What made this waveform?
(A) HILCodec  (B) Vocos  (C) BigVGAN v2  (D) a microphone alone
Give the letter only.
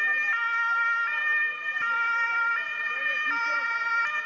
D